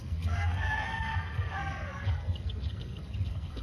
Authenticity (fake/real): fake